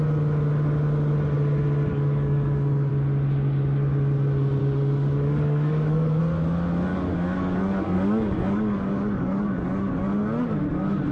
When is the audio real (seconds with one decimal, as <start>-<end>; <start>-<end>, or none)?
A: 0.0-1.9; 2.9-4.6; 6.2-6.9; 10.0-11.1